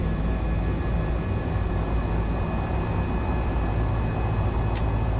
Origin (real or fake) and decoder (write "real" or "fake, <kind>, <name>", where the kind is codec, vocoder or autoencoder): real